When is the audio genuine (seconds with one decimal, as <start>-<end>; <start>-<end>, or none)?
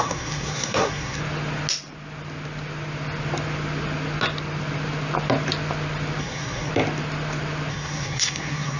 1.2-6.2; 6.7-7.7